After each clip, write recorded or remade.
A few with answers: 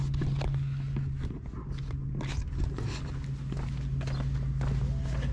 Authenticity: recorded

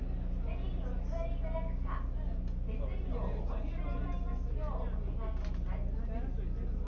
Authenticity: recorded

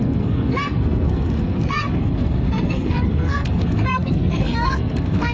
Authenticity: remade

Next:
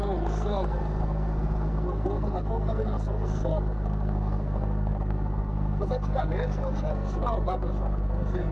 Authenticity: remade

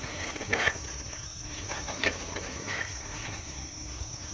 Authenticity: remade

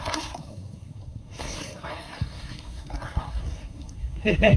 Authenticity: remade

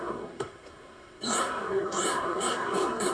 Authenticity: remade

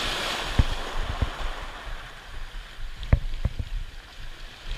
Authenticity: recorded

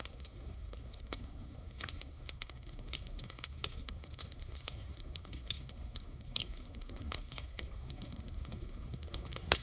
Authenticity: remade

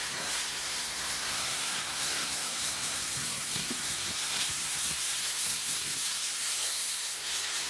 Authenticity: remade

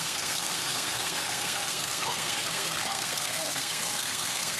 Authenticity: remade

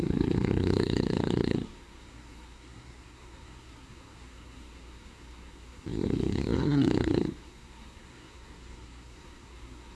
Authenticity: remade